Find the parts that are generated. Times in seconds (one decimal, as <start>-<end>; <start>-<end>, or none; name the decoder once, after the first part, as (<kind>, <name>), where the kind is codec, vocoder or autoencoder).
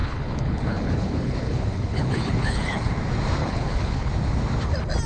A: 0.0-3.0 (codec, HILCodec); 3.4-4.1